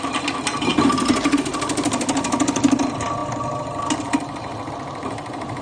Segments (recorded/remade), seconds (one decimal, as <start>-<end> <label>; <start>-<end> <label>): 0.0-5.6 recorded